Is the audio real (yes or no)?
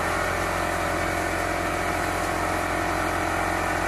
yes